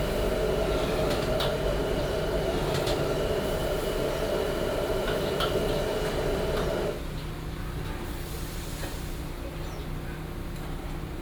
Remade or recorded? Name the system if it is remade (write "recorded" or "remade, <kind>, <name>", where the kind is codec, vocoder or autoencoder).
recorded